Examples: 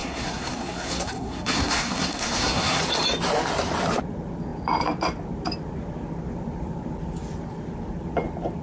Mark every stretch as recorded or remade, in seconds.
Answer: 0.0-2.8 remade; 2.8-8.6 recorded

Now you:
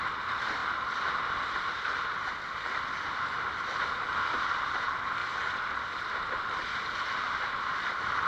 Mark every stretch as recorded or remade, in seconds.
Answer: 0.0-0.6 recorded; 0.6-2.3 remade; 2.3-5.2 recorded; 5.2-6.2 remade; 6.2-8.3 recorded

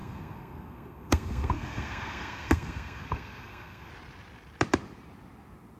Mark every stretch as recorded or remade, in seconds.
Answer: 0.0-3.9 remade; 3.9-5.8 recorded

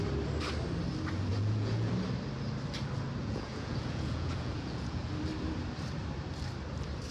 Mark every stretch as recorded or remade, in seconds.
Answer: 0.0-1.3 recorded; 1.3-1.9 remade; 1.9-3.2 recorded; 3.2-5.1 remade; 5.1-7.1 recorded

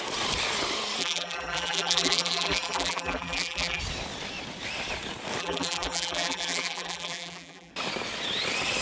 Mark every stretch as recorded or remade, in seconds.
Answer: 0.0-1.0 recorded; 1.0-3.8 remade; 3.8-5.4 recorded; 5.4-7.7 remade; 7.7-8.8 recorded